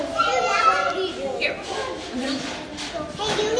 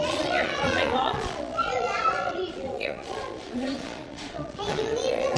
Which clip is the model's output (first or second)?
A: second